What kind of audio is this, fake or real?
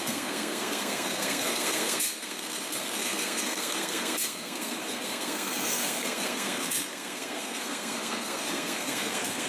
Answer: fake